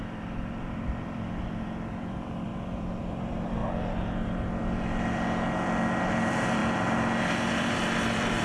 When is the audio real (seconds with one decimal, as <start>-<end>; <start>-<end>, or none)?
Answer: 3.6-6.1